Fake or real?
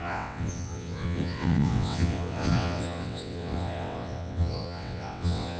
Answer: fake